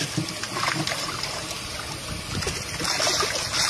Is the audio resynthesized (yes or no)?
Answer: no